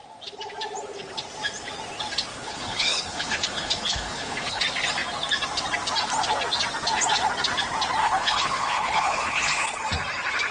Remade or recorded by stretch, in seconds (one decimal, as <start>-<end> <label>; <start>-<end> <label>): 0.0-2.3 recorded; 2.3-4.6 remade; 4.6-8.0 recorded; 8.0-9.8 remade; 9.8-10.5 recorded